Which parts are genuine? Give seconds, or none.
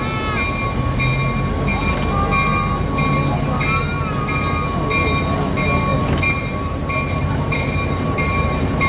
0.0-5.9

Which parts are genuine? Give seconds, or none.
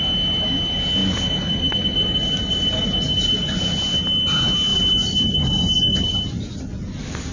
0.0-1.0; 3.8-4.7; 6.2-7.3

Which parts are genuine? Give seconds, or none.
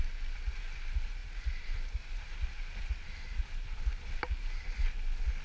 0.0-5.4